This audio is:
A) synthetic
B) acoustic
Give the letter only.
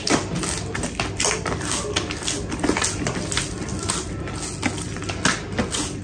B